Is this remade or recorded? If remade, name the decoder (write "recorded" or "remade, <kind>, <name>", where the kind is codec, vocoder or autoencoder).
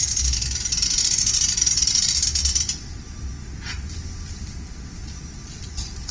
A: recorded